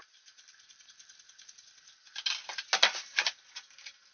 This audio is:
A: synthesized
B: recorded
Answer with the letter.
B